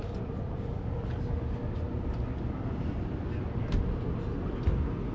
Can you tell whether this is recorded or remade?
recorded